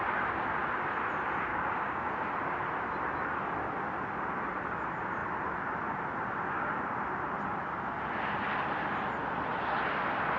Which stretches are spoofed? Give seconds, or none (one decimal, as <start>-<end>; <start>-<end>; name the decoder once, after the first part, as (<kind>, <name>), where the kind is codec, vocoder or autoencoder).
1.5-2.1 (codec, DAC)